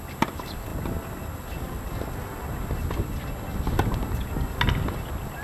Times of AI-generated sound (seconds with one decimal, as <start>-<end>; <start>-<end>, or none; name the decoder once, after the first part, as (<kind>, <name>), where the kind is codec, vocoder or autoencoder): none